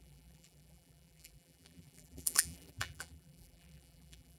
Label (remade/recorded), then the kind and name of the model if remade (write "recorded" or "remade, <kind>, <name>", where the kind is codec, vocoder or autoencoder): remade, vocoder, BigVGAN v2